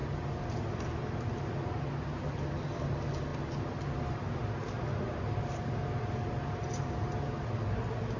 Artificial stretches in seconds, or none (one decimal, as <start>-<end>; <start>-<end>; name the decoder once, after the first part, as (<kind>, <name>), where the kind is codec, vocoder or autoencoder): none